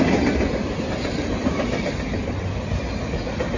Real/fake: real